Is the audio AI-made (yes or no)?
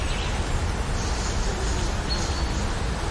no